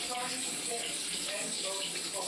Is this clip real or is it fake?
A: fake